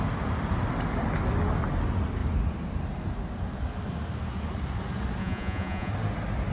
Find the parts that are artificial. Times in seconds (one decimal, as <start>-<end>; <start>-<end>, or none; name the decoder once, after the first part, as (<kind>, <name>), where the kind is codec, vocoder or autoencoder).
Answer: 5.2-5.9 (vocoder, Vocos)